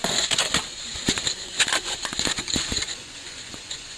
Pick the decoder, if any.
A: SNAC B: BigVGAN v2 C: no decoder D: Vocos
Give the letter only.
D